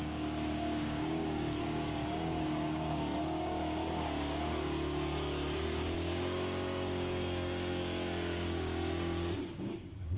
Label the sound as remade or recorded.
remade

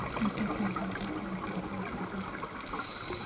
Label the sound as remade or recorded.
recorded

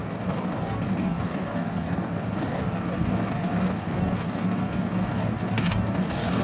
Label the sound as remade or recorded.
remade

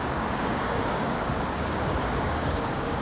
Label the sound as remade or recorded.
remade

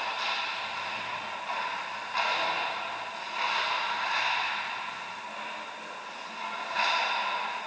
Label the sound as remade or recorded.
recorded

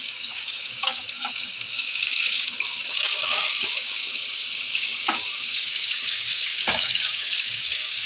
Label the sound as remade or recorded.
remade